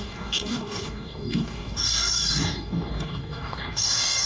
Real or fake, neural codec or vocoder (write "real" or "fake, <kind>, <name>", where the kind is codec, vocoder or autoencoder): fake, codec, DAC